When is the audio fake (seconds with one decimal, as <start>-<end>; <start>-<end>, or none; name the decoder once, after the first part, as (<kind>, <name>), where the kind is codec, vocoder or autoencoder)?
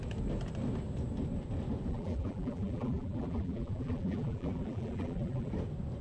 1.9-5.5 (vocoder, BigVGAN v2)